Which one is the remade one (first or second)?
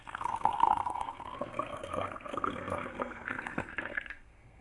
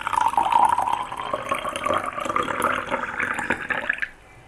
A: first